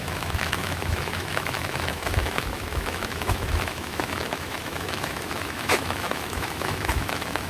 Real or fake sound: fake